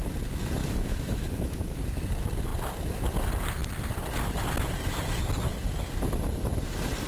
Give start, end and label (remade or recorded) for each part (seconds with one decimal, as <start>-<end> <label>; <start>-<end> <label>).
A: 0.0-0.6 recorded; 0.6-1.8 remade; 1.8-7.1 recorded